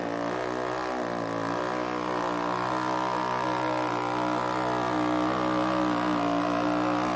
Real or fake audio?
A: real